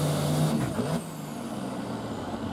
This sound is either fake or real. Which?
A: real